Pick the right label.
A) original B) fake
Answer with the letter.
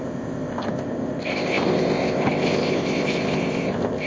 B